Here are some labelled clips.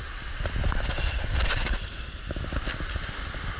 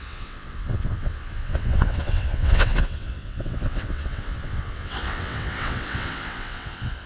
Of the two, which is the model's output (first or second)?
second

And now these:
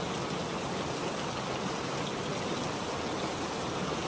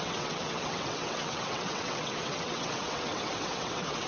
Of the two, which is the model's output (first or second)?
second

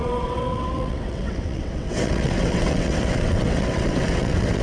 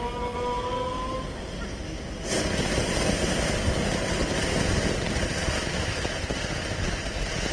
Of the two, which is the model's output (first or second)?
first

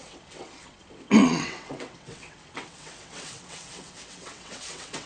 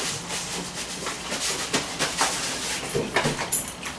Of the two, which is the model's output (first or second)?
first